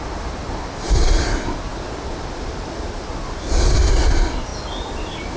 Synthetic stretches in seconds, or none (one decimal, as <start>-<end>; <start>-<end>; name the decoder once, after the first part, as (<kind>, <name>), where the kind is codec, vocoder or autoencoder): none